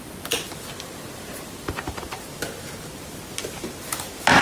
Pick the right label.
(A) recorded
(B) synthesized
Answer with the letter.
A